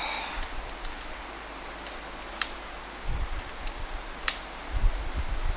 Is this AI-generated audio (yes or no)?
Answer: no